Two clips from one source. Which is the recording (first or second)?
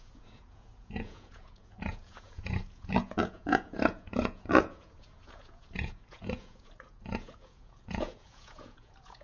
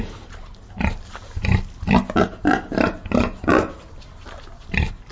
second